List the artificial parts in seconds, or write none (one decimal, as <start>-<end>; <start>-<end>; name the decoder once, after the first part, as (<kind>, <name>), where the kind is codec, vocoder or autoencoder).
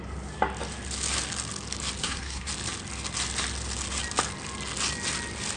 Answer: 2.0-2.5 (codec, SNAC)